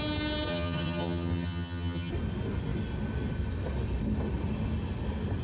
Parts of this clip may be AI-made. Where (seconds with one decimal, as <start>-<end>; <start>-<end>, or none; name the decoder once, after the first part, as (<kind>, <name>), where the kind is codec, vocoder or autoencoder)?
0.5-2.1 (vocoder, HiFi-GAN)

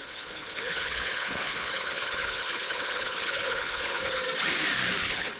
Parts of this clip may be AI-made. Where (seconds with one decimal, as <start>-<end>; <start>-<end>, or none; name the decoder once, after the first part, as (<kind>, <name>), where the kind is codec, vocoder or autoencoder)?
0.0-4.2 (codec, HILCodec); 5.0-5.4